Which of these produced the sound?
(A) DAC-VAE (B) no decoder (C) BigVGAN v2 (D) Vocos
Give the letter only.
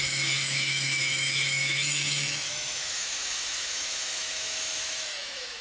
A